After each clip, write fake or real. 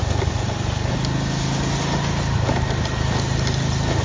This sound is real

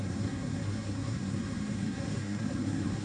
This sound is fake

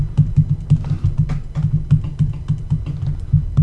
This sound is real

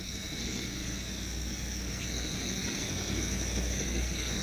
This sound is fake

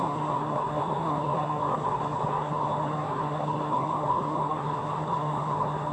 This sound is fake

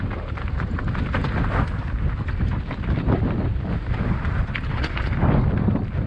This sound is real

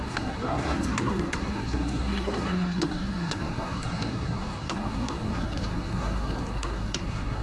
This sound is fake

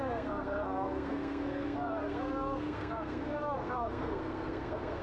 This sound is fake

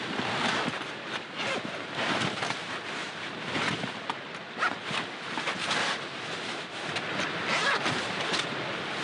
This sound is real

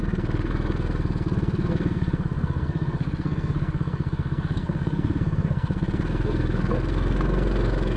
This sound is fake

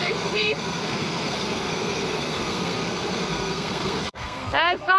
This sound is fake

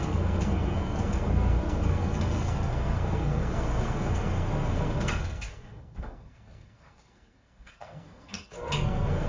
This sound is fake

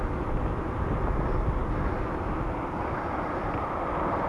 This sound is real